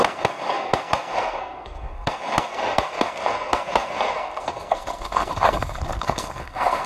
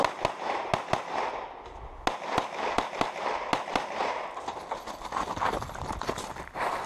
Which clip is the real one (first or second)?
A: second